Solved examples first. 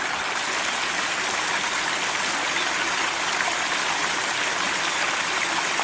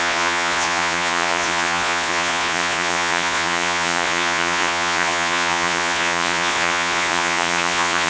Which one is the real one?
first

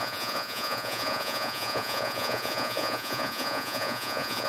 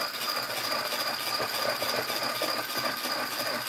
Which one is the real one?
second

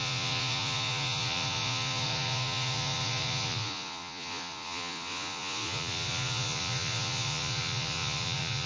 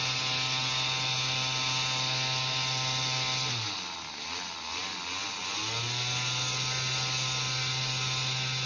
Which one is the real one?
second